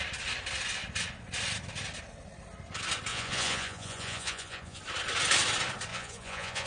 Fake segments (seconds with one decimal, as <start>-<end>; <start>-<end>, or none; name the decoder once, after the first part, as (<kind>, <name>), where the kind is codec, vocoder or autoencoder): 3.1-4.8 (vocoder, Vocos); 5.9-6.7